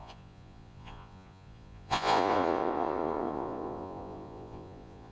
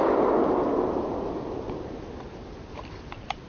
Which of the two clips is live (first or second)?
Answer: second